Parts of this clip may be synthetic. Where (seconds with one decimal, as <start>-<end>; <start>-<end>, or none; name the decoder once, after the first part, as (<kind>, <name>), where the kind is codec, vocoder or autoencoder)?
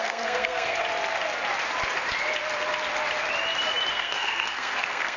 0.0-0.8 (codec, SNAC); 3.9-5.2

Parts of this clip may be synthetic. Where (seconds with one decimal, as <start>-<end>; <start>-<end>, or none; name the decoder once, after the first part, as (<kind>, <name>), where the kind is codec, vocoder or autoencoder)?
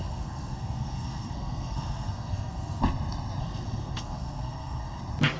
0.0-2.8 (codec, SNAC); 3.4-5.0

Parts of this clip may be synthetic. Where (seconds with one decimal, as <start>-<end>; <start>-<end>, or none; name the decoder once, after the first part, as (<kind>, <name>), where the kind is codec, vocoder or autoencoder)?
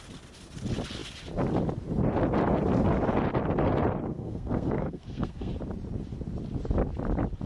4.1-5.5 (codec, SNAC)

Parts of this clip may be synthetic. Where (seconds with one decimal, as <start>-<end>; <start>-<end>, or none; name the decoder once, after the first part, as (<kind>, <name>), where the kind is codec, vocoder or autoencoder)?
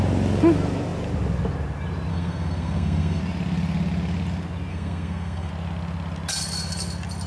2.1-3.2 (codec, SNAC); 4.7-5.5